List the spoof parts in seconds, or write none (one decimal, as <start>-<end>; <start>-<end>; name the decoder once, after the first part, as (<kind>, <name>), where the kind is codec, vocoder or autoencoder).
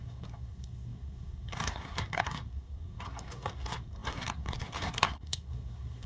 0.0-6.1 (codec, SNAC)